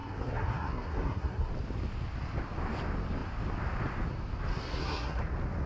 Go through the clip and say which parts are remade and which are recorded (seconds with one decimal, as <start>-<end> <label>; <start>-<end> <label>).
0.0-1.5 remade; 1.5-4.5 recorded; 4.5-5.2 remade; 5.2-5.7 recorded